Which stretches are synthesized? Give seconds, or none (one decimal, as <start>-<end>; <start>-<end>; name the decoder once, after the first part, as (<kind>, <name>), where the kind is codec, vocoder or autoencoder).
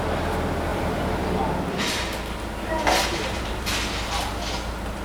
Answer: 0.7-1.4 (vocoder, BigVGAN v2); 3.1-3.7